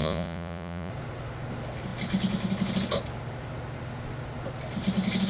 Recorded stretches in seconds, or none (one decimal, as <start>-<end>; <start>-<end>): 0.9-5.3